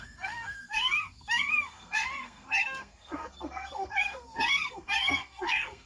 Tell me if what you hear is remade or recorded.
remade